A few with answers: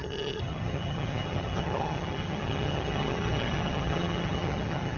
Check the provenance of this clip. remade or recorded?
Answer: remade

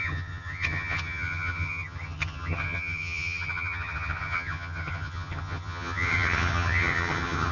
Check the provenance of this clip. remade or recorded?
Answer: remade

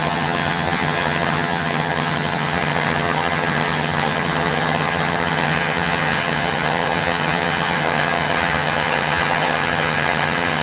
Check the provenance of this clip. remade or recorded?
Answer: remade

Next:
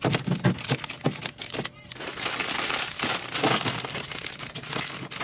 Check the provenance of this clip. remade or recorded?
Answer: recorded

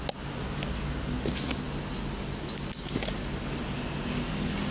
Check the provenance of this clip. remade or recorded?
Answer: recorded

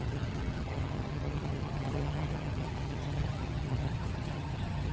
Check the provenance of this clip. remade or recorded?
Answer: remade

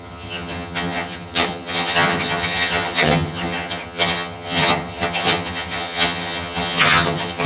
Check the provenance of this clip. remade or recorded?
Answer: remade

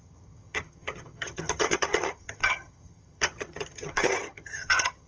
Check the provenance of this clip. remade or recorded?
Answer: remade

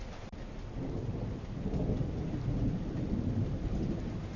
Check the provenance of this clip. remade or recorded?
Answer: recorded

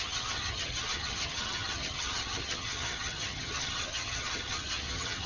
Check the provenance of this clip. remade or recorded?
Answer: remade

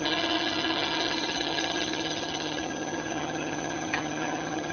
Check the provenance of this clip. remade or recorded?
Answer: remade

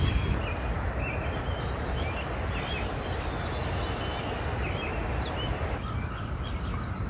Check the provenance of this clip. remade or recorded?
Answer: recorded